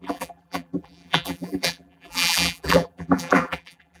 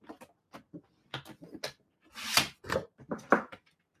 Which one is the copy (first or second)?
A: first